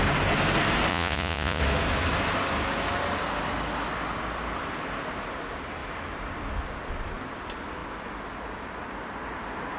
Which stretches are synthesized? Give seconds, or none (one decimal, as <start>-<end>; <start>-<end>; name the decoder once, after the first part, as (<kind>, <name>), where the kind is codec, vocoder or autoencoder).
0.9-1.6 (vocoder, Vocos)